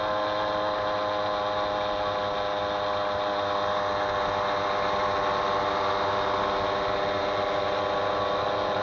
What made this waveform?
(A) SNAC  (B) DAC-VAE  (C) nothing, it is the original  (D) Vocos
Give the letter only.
C